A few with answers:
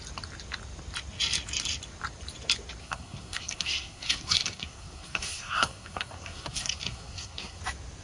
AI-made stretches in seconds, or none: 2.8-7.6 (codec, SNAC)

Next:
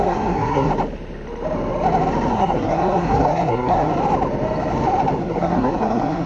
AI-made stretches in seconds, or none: 0.0-0.7 (codec, SNAC); 2.3-3.9; 5.2-6.3